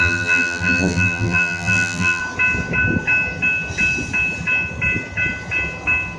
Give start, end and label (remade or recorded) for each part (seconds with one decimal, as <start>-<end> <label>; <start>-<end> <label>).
0.0-2.2 remade; 2.2-6.2 recorded